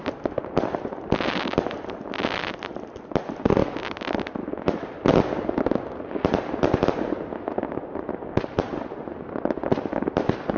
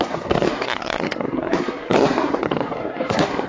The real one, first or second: first